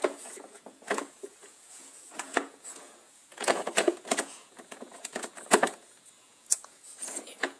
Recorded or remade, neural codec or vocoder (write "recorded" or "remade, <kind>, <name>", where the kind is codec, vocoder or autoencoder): remade, vocoder, Vocos